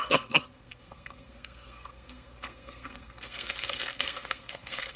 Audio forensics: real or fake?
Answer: fake